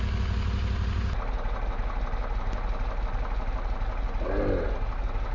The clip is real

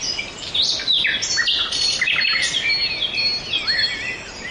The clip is real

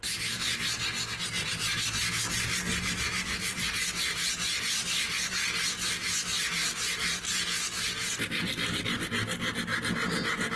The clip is real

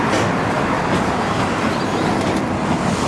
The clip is real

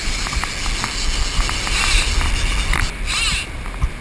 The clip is real